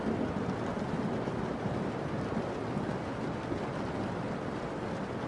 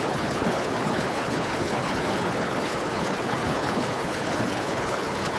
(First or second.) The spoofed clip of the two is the second